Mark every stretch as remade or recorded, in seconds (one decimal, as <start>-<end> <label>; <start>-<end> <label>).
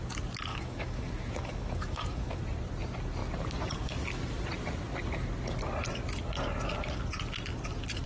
0.0-0.5 recorded; 0.5-2.4 remade; 2.4-8.1 recorded